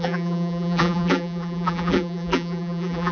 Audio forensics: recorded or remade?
remade